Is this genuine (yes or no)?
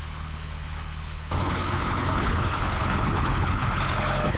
no